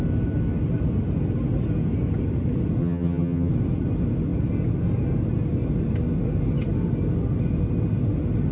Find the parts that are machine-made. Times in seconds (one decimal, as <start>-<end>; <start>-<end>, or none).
2.8-3.5